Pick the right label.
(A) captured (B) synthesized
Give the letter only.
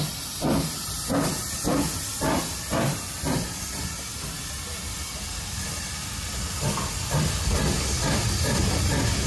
A